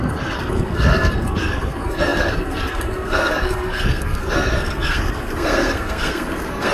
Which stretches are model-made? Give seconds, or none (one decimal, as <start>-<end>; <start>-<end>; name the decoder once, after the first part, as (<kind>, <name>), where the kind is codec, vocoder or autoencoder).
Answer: 0.0-6.7 (codec, SNAC)